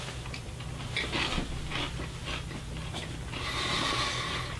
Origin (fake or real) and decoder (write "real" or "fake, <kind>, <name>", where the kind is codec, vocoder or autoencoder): real